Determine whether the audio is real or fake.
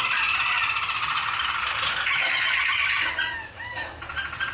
real